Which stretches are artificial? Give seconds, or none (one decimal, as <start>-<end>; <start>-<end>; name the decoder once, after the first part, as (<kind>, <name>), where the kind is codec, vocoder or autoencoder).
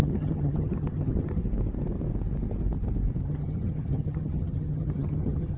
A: 0.0-1.4 (vocoder, HiFi-GAN); 3.2-5.6